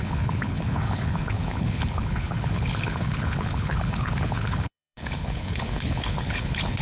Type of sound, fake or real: fake